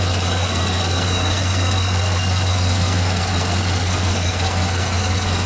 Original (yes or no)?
no